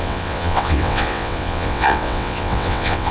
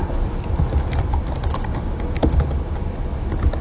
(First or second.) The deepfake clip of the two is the first